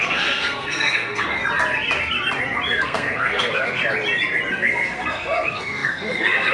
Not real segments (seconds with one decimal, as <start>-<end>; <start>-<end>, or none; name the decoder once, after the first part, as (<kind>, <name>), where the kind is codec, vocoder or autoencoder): 0.0-1.4 (codec, SNAC); 2.8-3.8; 4.5-6.5